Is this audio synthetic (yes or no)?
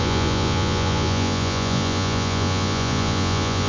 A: yes